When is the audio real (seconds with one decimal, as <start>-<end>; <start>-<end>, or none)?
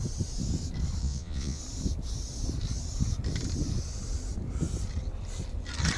0.0-1.0; 1.6-6.0